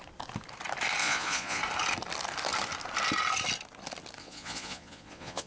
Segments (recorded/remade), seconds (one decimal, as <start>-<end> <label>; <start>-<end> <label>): 0.0-1.0 recorded; 1.0-1.6 remade; 1.6-4.2 recorded; 4.2-5.5 remade